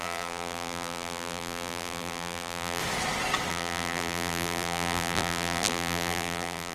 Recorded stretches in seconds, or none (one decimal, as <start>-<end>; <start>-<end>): 2.8-3.5